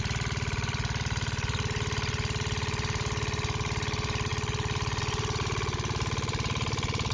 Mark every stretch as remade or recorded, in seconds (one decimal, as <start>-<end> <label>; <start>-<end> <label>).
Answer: 0.0-7.1 recorded